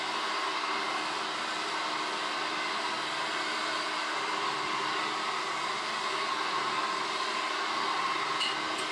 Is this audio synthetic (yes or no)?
no